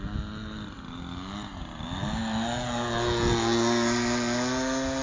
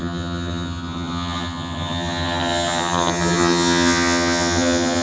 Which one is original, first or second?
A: first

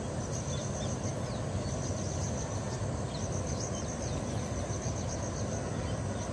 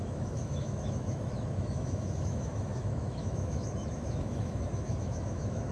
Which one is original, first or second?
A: first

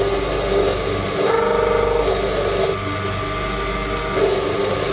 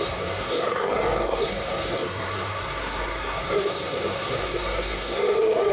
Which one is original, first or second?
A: first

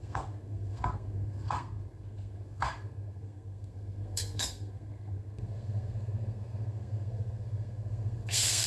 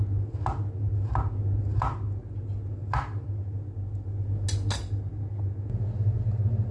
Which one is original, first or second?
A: second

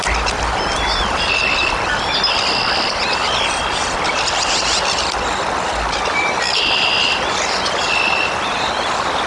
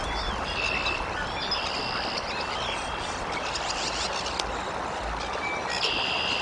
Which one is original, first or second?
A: second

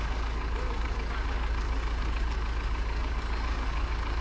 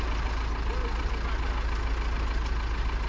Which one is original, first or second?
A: second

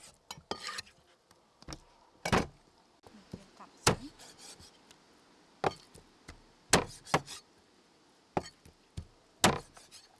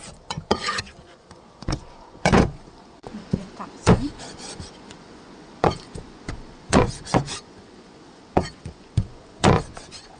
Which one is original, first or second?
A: first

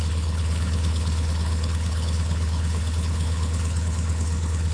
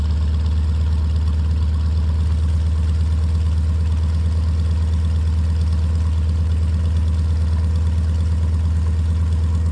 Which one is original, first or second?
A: second